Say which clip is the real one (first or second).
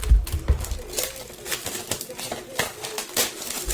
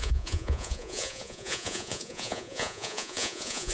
first